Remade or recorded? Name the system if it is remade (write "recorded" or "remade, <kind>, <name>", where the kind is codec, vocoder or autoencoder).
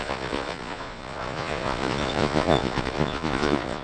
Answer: remade, vocoder, Vocos